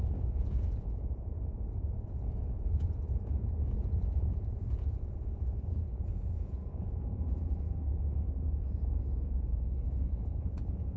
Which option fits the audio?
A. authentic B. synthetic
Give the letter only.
B